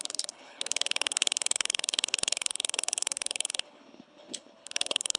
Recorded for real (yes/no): no